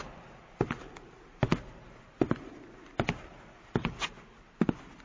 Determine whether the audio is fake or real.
real